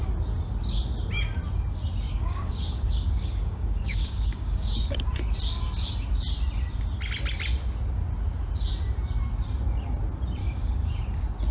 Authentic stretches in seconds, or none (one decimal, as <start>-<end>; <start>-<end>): 0.0-2.1; 4.9-10.4; 10.9-11.5